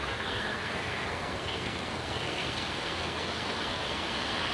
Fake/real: fake